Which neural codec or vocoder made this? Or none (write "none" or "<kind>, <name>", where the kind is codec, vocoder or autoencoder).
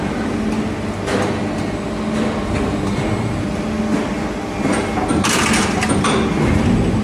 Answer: none